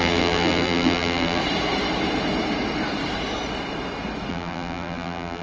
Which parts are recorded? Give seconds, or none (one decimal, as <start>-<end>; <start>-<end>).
1.4-4.3